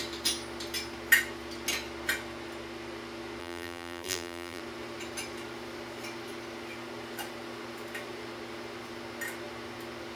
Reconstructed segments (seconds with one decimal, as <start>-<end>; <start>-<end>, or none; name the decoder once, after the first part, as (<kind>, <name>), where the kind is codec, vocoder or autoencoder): 3.4-4.6 (vocoder, BigVGAN v2)